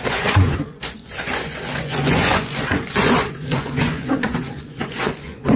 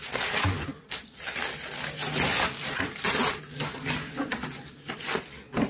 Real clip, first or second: second